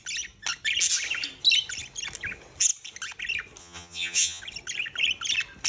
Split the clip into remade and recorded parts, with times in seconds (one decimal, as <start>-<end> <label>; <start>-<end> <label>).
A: 0.0-3.6 recorded; 3.6-4.4 remade; 4.4-5.7 recorded